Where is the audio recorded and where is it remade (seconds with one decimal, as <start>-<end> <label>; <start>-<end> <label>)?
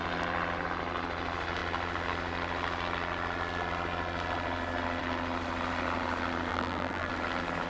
0.0-6.5 recorded; 6.5-7.1 remade; 7.1-7.7 recorded